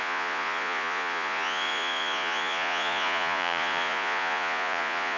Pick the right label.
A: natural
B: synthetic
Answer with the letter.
B